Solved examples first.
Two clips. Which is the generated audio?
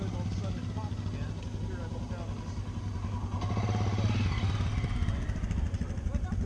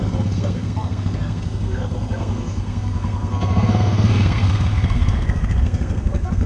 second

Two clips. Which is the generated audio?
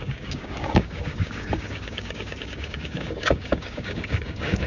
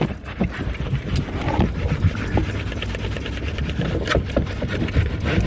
first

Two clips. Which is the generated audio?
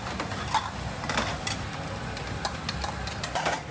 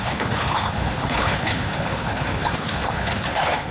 second